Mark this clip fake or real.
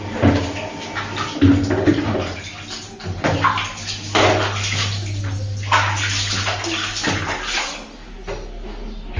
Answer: real